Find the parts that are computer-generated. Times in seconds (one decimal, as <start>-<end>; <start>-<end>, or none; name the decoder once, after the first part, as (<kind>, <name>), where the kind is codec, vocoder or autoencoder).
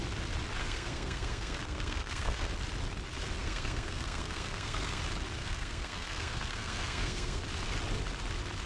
0.6-2.5 (codec, SNAC); 3.4-5.0; 5.4-7.4